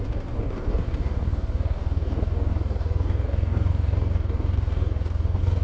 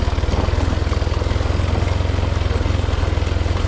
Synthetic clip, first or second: first